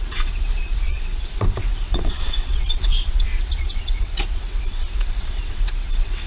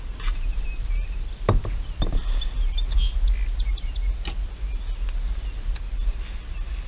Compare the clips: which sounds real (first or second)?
second